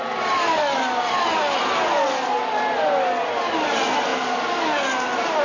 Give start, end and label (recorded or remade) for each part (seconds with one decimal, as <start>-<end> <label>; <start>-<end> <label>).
0.0-5.4 recorded